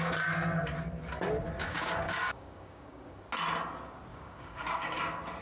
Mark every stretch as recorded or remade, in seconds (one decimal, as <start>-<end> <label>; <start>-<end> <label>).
0.0-1.6 recorded; 1.6-3.2 remade; 3.2-4.1 recorded; 4.1-5.0 remade; 5.0-5.4 recorded